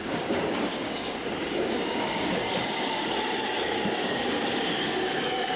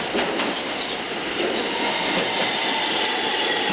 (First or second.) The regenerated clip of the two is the first